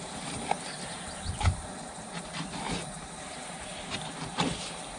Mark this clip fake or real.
fake